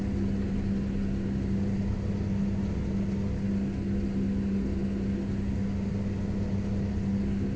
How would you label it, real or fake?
real